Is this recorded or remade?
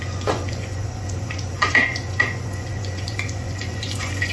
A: remade